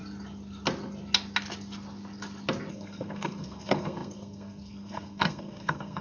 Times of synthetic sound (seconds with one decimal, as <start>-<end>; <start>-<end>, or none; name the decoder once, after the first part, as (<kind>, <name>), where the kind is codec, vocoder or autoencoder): 2.7-6.0 (codec, SNAC)